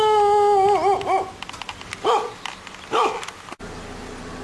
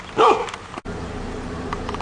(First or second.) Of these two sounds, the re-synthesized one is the second